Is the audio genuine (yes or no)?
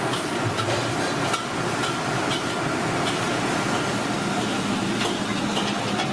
yes